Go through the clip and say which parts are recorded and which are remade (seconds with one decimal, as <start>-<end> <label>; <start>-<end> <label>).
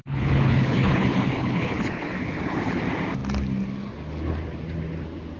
0.0-2.8 remade; 2.8-5.4 recorded